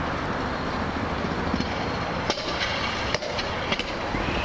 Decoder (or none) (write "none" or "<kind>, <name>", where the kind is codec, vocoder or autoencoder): none